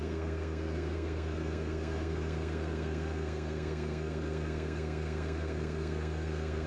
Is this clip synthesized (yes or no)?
yes